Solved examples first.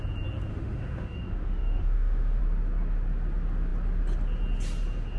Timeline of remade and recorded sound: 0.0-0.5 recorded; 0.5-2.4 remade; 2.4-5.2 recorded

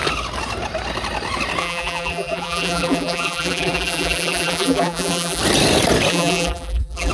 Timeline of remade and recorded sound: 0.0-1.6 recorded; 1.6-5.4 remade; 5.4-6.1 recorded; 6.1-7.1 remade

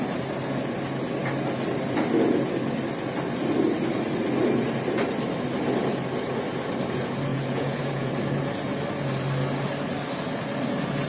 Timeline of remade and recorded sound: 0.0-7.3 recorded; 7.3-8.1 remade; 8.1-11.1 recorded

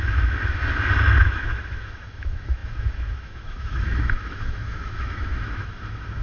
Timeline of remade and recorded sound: 0.0-0.6 remade; 0.6-1.2 recorded; 1.2-6.2 remade

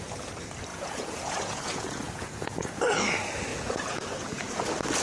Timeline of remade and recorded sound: 0.0-0.7 recorded; 0.7-2.8 remade; 2.8-3.5 recorded; 3.5-4.6 remade; 4.6-5.0 recorded

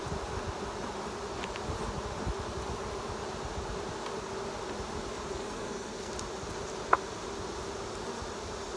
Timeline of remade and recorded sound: 0.0-5.3 recorded; 5.3-6.1 remade; 6.1-8.8 recorded

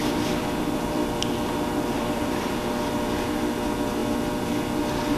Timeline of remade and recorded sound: 0.0-2.5 remade; 2.5-5.2 recorded